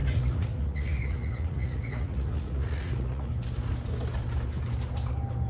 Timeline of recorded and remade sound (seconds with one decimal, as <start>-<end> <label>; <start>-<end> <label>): 0.0-3.3 remade; 3.3-5.5 recorded